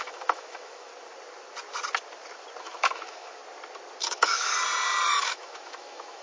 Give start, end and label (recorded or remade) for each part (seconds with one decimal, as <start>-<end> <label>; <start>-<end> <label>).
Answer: 0.0-0.9 remade; 0.9-2.6 recorded; 2.6-3.4 remade; 3.4-4.0 recorded; 4.0-4.5 remade; 4.5-5.1 recorded; 5.1-6.2 remade